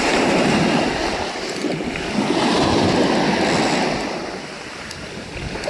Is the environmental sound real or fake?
real